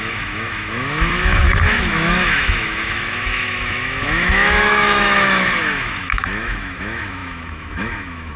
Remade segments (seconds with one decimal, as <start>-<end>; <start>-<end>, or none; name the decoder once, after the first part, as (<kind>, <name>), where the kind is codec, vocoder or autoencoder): 0.0-8.4 (autoencoder, DAC-VAE)

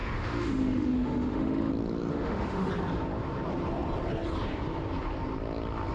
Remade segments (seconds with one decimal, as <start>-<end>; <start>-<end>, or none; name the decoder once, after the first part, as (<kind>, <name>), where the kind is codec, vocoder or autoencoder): 0.0-1.7 (autoencoder, DAC-VAE); 2.1-2.7

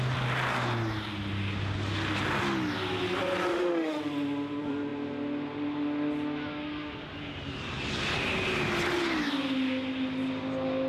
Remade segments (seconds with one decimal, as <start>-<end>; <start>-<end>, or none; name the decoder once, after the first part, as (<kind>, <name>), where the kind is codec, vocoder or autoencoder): 3.5-4.0 (autoencoder, DAC-VAE)

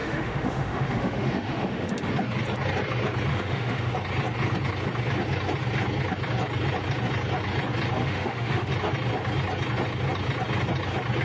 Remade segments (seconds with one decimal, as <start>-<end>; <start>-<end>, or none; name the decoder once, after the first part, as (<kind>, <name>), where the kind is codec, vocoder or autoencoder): 0.0-2.1 (autoencoder, DAC-VAE); 3.3-3.9; 8.0-8.7

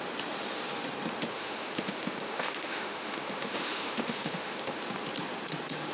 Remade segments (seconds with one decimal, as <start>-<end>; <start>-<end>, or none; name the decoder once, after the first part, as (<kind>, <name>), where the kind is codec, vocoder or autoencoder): 1.3-4.8 (autoencoder, DAC-VAE)

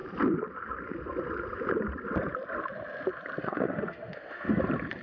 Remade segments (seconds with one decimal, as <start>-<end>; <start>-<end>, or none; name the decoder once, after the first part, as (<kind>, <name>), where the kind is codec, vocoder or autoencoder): 3.4-4.6 (autoencoder, DAC-VAE)

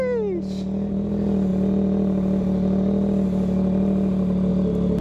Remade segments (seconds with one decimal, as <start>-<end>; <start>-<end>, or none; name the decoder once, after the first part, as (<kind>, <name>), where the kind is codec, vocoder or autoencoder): none

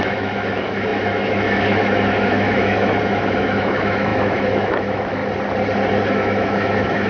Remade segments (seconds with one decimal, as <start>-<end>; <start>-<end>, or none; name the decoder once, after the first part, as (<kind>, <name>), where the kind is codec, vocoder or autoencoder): 0.0-5.2 (autoencoder, DAC-VAE); 6.1-7.1